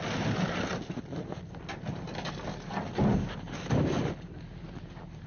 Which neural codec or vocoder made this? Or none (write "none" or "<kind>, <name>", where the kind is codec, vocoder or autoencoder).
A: none